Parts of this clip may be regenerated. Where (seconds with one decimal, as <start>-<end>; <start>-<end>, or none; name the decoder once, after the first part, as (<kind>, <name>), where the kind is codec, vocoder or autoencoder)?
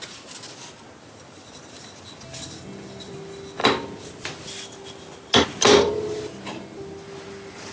none